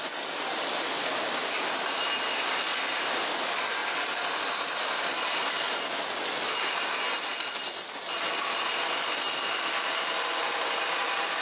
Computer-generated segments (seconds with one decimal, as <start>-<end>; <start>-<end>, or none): none